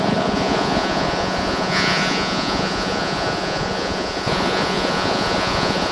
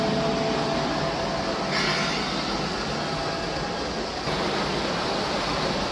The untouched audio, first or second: second